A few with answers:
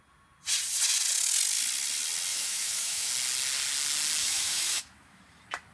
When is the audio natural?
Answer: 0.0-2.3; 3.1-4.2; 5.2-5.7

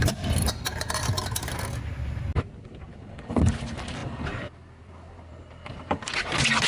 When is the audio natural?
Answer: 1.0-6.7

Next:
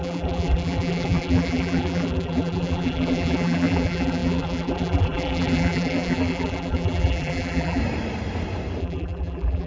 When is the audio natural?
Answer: 7.8-8.8

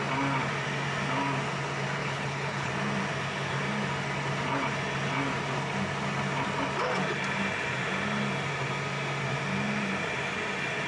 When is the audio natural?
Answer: 0.0-2.0; 2.7-10.9

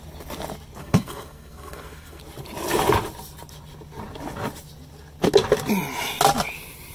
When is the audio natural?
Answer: 0.0-0.8; 2.2-6.9